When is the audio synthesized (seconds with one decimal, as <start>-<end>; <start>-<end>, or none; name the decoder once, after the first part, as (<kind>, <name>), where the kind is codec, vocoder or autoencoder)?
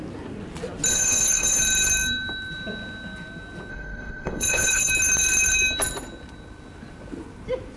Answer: 0.9-1.6 (codec, HILCodec); 3.7-4.9